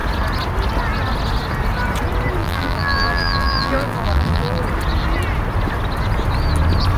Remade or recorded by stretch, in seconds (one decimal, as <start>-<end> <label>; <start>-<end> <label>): 0.0-2.4 recorded; 2.4-4.6 remade; 4.6-7.0 recorded

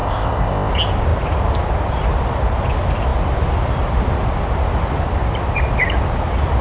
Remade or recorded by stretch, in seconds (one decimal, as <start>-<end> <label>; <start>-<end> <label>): 0.0-0.7 remade; 0.7-6.6 recorded

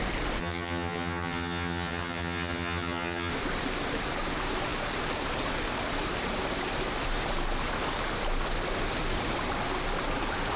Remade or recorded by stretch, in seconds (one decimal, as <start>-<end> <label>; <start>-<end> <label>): 0.0-0.4 recorded; 0.4-3.3 remade; 3.3-10.6 recorded

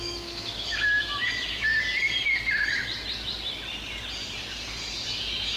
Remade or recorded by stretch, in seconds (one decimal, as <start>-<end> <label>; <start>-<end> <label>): 0.0-1.7 remade; 1.7-5.1 recorded; 5.1-5.6 remade